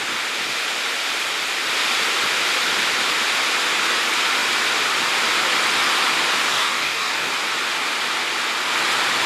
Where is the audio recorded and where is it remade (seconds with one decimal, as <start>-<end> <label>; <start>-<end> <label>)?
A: 0.0-6.5 recorded; 6.5-7.3 remade; 7.3-9.3 recorded